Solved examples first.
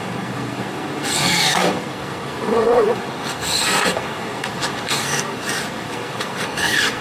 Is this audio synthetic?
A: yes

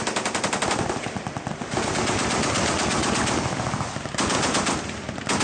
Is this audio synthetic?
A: no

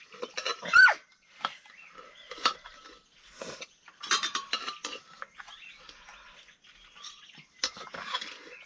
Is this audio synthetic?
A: no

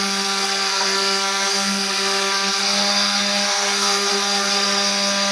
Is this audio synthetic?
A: yes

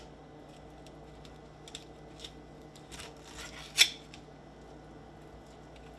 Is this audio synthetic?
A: no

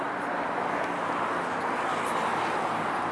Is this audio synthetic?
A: no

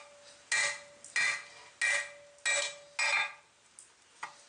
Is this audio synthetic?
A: no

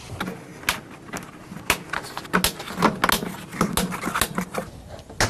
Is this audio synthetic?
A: no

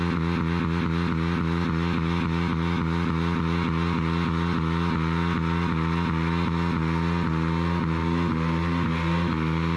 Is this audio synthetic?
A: no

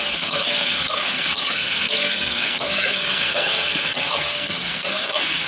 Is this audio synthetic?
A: yes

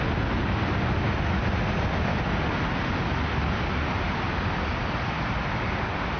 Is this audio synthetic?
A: no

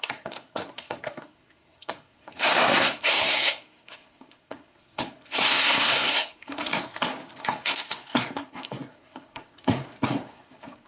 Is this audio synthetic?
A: yes